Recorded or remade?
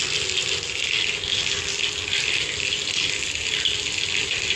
recorded